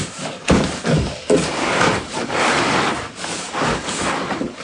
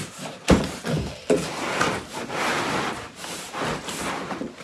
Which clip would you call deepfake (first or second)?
first